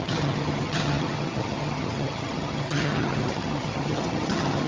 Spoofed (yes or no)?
yes